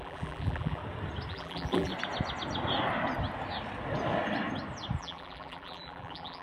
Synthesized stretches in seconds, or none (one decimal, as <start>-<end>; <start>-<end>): 0.0-0.8; 1.3-1.9; 5.0-6.4